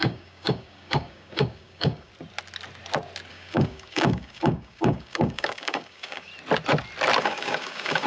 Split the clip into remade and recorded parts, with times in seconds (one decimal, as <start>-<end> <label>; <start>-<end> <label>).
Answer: 0.0-2.1 remade; 2.1-3.3 recorded; 3.3-6.3 remade; 6.3-7.2 recorded; 7.2-8.1 remade